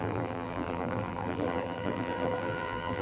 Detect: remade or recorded remade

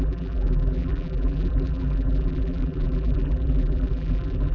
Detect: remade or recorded remade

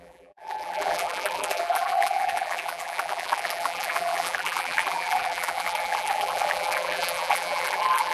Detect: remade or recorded remade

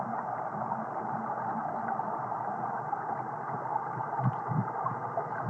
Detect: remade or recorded remade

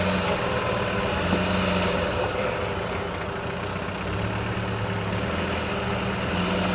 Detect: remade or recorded recorded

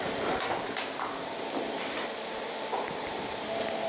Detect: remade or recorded remade